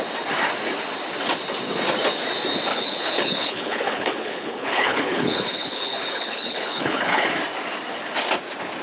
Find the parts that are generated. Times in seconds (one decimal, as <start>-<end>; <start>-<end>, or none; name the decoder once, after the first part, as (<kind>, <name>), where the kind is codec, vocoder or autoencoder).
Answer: 2.7-7.3 (codec, HILCodec)